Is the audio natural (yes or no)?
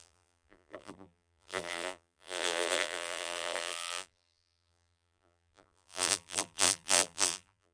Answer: no